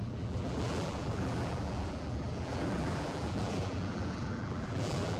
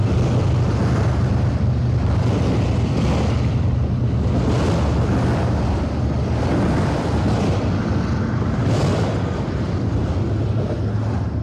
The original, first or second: second